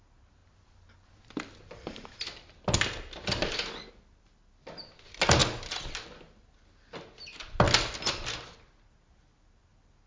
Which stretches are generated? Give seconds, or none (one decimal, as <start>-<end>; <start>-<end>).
none